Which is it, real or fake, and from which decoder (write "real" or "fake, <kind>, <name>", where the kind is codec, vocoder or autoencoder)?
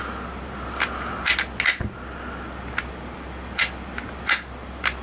real